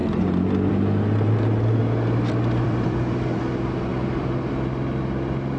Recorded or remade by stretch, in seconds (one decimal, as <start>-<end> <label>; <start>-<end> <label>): 0.0-1.8 recorded; 1.8-3.4 remade; 3.4-3.9 recorded; 3.9-4.5 remade; 4.5-5.6 recorded